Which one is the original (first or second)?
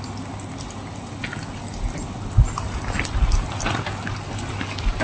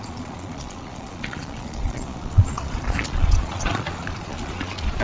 first